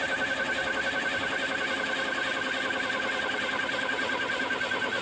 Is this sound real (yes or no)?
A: no